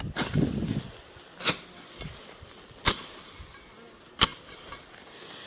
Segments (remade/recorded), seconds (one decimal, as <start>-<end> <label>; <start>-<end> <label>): 0.0-5.5 recorded